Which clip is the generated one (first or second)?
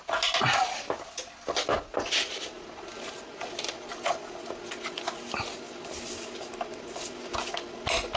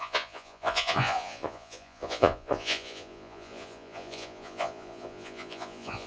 second